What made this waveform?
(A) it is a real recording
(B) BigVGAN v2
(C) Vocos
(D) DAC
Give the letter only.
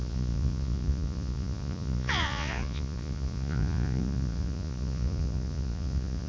C